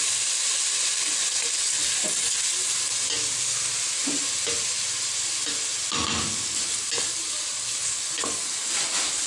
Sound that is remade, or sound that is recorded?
recorded